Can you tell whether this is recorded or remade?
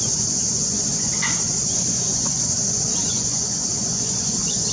remade